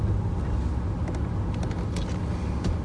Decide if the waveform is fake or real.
real